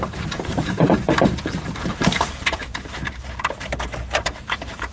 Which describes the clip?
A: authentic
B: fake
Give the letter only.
B